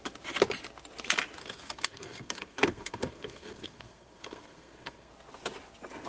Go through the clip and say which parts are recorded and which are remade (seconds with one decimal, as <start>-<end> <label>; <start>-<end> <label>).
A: 0.0-1.4 recorded; 1.4-5.1 remade; 5.1-6.1 recorded